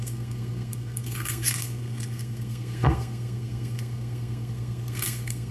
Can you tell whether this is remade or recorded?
remade